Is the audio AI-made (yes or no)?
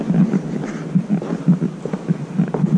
no